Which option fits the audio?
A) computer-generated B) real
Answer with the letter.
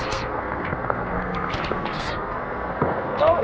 A